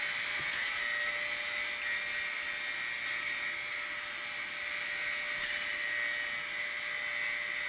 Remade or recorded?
recorded